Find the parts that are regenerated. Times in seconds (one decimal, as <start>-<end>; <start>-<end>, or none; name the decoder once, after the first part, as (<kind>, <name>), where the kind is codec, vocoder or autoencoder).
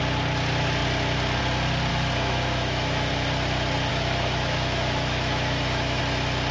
1.9-3.1 (autoencoder, DAC-VAE); 3.9-6.0